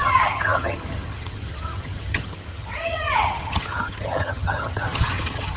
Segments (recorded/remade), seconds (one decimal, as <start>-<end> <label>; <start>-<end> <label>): 0.0-5.6 remade